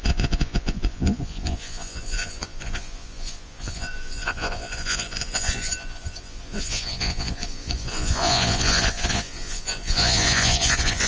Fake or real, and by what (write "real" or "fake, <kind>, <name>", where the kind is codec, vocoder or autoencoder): fake, vocoder, Vocos